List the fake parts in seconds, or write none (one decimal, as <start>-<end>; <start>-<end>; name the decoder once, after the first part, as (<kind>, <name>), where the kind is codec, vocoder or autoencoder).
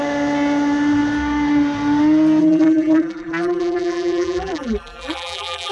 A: 2.4-5.7 (vocoder, BigVGAN v2)